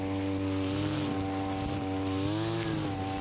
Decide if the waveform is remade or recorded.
recorded